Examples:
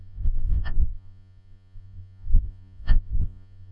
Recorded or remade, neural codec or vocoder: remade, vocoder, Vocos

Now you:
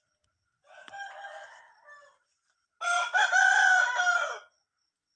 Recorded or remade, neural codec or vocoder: recorded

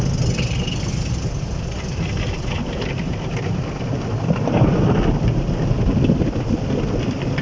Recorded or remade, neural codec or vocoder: recorded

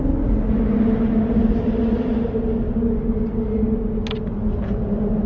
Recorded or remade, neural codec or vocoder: recorded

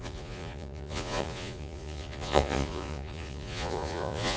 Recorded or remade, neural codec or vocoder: remade, vocoder, Vocos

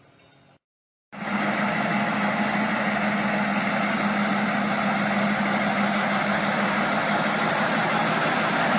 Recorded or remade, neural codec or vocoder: recorded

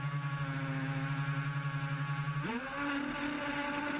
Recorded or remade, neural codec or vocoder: recorded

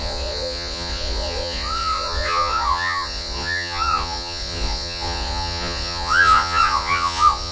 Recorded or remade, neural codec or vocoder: remade, vocoder, Vocos